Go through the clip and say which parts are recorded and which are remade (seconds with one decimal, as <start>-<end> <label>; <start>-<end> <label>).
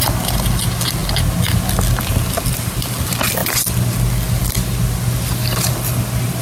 0.0-6.4 recorded